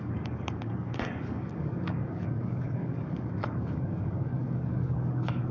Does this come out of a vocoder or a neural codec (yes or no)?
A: yes